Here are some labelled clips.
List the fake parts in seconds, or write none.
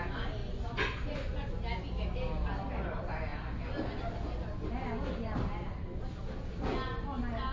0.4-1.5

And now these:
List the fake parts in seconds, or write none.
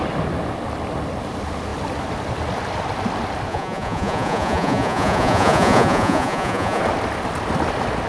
3.5-6.8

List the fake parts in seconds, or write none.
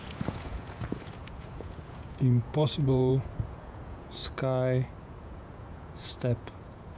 0.0-4.2; 5.0-7.0